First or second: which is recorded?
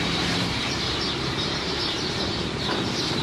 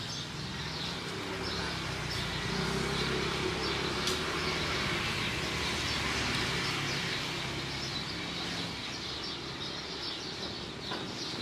second